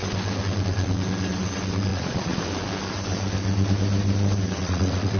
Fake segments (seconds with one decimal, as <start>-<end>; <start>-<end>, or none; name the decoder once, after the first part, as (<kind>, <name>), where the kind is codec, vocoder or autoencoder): 1.9-2.4 (vocoder, Vocos); 4.6-5.2